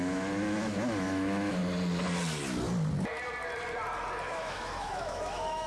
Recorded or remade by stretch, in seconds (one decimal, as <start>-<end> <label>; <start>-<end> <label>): 0.0-1.6 remade; 1.6-4.3 recorded; 4.3-5.7 remade